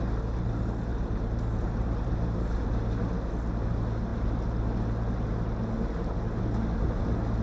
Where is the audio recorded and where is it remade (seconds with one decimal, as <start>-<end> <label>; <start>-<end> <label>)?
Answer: 0.0-0.9 recorded; 0.9-2.9 remade; 2.9-7.4 recorded